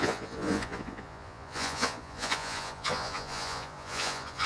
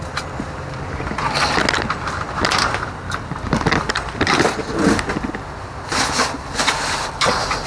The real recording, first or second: second